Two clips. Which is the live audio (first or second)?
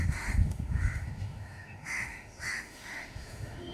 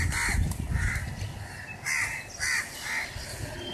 second